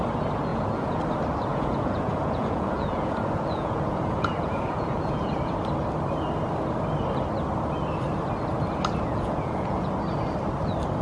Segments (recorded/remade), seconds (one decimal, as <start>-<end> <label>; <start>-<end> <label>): 0.0-0.5 recorded; 0.5-1.0 remade; 1.0-1.5 recorded; 1.5-5.5 remade; 5.5-9.1 recorded; 9.1-9.9 remade; 9.9-11.0 recorded